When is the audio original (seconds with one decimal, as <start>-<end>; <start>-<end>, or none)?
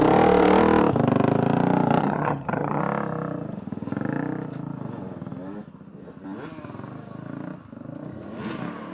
0.0-2.0; 2.8-8.9